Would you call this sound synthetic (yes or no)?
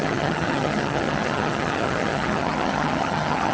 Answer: yes